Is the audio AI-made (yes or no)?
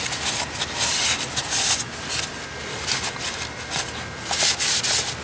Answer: no